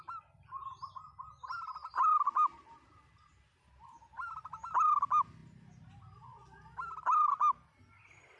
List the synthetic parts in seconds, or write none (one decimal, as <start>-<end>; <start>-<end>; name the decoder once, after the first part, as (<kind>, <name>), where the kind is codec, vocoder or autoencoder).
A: none